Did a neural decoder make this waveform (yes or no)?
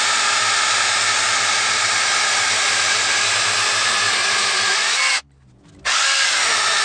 no